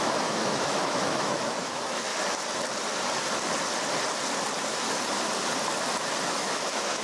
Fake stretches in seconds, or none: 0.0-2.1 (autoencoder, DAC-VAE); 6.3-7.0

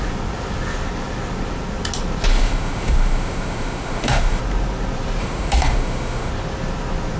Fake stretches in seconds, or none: 2.3-4.4 (autoencoder, DAC-VAE); 5.2-6.3

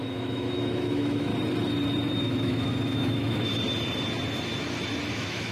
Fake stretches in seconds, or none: 0.0-1.3 (autoencoder, DAC-VAE); 2.2-3.5; 5.1-5.5

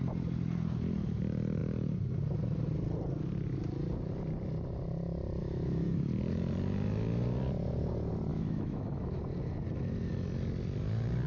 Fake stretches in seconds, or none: 5.4-6.1 (autoencoder, DAC-VAE); 8.3-9.2

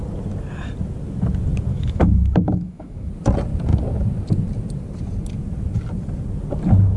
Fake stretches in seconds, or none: 1.7-3.1 (autoencoder, DAC-VAE)

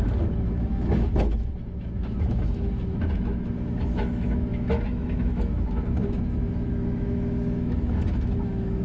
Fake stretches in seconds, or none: 0.0-8.8 (autoencoder, DAC-VAE)

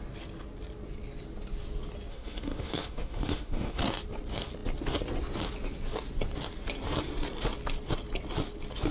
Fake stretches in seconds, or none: 2.1-3.8 (autoencoder, DAC-VAE)